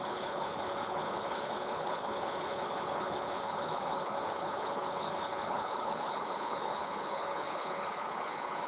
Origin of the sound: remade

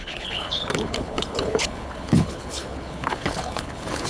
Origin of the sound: remade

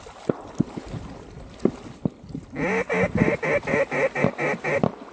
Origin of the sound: recorded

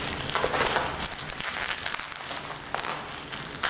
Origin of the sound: recorded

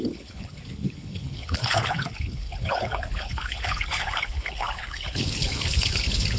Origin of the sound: remade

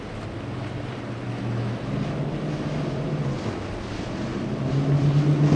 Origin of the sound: recorded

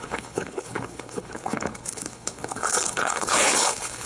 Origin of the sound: remade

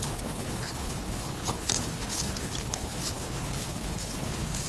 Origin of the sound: remade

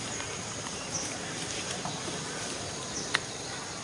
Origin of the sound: recorded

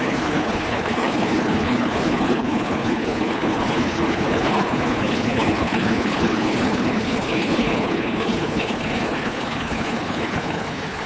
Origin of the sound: remade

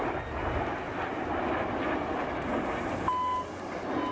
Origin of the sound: recorded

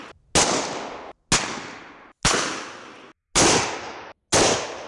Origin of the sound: recorded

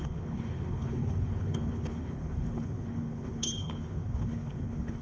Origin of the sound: remade